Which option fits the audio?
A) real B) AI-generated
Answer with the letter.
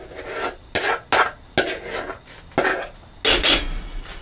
A